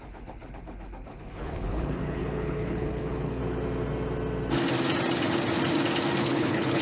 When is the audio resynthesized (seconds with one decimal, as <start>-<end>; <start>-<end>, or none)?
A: 0.0-3.4; 6.2-6.8